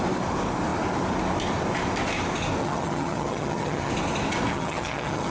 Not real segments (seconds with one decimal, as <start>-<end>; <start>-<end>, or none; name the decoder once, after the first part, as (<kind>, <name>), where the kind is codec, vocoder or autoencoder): 2.6-3.9 (vocoder, HiFi-GAN); 4.5-5.3